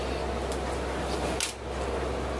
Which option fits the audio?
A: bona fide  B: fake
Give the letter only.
A